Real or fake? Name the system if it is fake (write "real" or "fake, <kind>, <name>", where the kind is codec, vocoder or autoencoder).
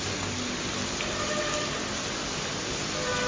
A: real